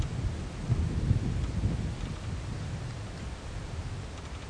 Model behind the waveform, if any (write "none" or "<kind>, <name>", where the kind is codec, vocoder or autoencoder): none